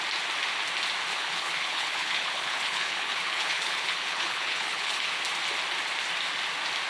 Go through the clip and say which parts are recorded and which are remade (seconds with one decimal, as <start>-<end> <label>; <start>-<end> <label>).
0.0-1.1 recorded; 1.1-5.2 remade; 5.2-6.9 recorded